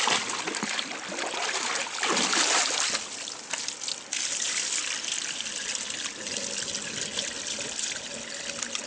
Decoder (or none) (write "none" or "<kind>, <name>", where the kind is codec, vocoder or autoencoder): none